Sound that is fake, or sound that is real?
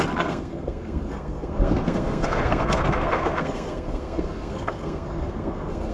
fake